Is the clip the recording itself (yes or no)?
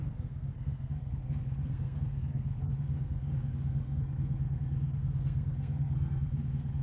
no